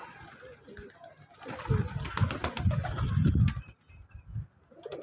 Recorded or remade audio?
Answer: recorded